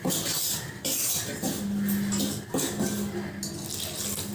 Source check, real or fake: real